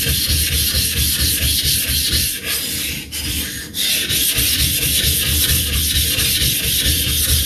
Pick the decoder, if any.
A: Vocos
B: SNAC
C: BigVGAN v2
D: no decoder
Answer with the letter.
D